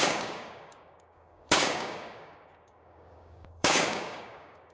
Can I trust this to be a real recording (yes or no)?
no